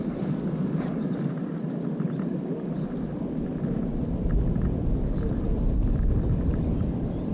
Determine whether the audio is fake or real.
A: fake